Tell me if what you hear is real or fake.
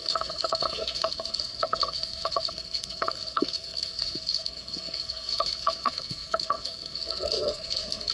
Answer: fake